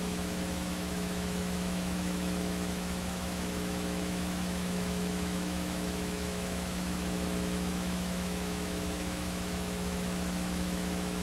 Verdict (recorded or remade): remade